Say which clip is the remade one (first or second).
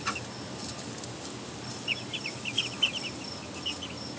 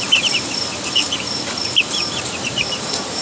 second